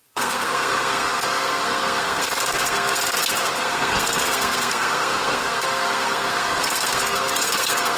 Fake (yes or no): yes